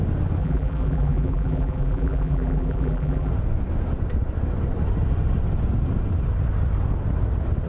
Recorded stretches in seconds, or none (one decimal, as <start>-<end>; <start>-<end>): 0.0-0.4; 3.3-7.7